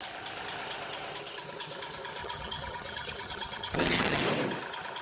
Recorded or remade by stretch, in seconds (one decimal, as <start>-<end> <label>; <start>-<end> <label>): 0.0-2.2 recorded; 2.2-4.2 remade; 4.2-5.0 recorded

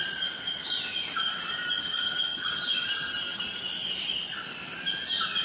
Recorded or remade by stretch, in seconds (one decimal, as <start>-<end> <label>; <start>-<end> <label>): 0.0-1.8 recorded; 1.8-3.4 remade; 3.4-5.4 recorded

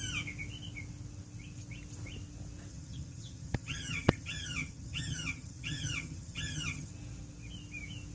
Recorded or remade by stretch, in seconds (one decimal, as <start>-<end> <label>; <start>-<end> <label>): 0.0-2.7 recorded; 2.7-6.9 remade; 6.9-8.1 recorded

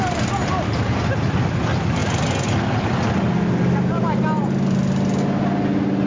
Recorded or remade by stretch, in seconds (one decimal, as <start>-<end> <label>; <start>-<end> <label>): 0.0-6.1 recorded

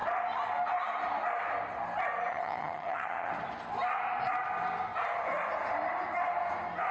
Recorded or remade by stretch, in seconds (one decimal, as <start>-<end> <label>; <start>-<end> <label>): 0.0-2.3 recorded; 2.3-3.3 remade; 3.3-6.9 recorded

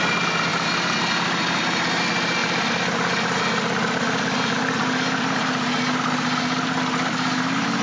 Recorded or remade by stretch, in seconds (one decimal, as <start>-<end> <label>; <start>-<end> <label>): 0.0-7.8 recorded